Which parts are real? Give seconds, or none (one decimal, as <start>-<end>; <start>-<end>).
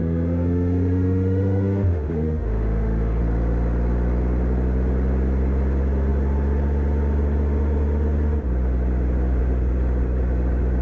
3.2-10.8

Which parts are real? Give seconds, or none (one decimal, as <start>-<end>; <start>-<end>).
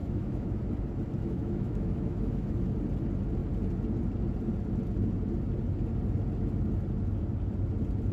0.6-1.2; 2.6-8.1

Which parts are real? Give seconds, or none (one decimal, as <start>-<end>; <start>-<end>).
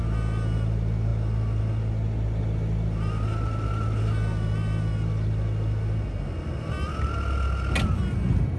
0.0-8.6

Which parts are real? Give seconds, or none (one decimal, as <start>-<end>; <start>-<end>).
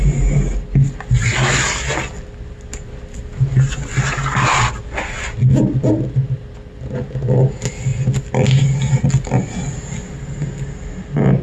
0.0-11.4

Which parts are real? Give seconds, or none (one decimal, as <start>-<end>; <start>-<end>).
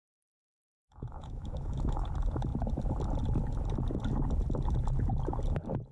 2.1-5.9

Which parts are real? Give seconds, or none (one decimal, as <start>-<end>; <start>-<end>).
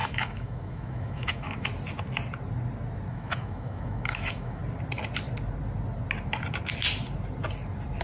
1.7-3.1; 4.6-8.0